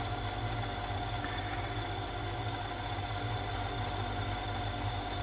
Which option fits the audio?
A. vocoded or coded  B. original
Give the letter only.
B